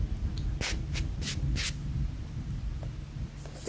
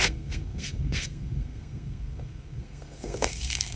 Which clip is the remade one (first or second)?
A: second